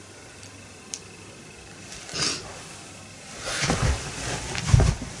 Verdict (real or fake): real